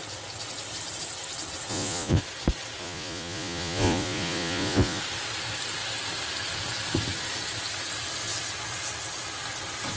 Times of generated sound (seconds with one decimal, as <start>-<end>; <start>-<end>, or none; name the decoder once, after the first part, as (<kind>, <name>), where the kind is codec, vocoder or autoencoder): 1.7-2.2 (vocoder, Vocos); 2.8-5.0